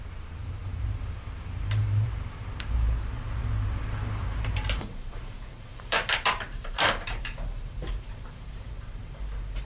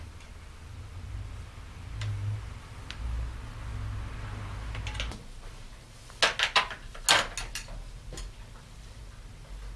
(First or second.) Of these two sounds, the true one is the second